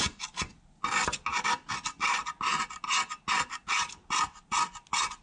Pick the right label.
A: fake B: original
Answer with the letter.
B